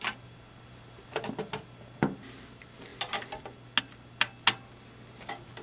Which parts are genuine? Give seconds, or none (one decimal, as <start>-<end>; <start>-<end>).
0.0-5.6